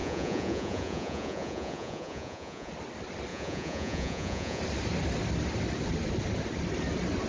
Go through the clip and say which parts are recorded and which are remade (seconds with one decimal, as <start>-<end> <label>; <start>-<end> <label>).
0.0-2.7 remade; 2.7-3.3 recorded; 3.3-4.6 remade; 4.6-7.3 recorded